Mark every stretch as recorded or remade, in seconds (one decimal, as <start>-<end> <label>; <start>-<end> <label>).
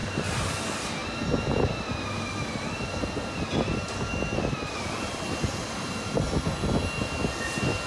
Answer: 0.0-0.5 remade; 0.5-7.9 recorded